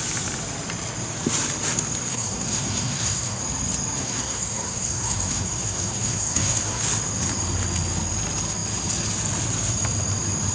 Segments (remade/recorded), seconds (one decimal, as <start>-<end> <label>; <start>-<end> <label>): 0.0-2.1 recorded; 2.1-3.4 remade; 3.4-4.0 recorded; 4.0-6.8 remade; 6.8-10.5 recorded